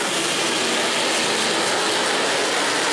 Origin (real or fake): real